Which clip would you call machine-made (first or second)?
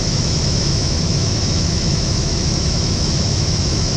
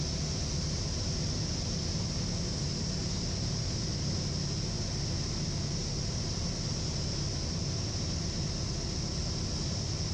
first